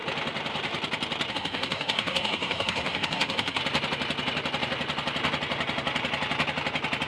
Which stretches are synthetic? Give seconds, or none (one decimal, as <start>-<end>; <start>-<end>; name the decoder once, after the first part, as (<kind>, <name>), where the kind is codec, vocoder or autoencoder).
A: 1.3-3.6 (codec, SNAC)